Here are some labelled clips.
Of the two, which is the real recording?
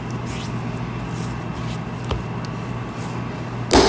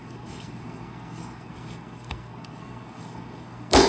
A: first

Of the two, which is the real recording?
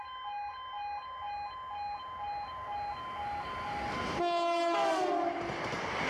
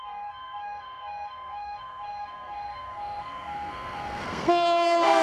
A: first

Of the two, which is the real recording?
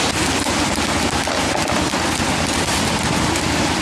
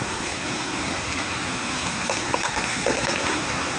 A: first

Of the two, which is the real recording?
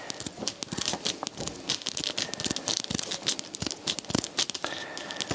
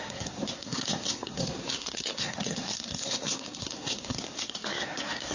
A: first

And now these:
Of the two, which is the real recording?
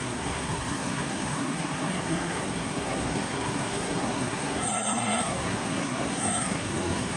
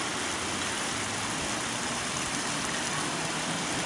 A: second